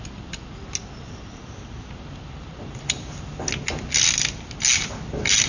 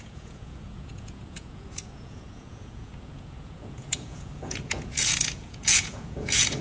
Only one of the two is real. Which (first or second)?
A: first